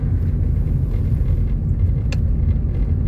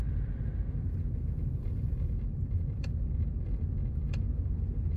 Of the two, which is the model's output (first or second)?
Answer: second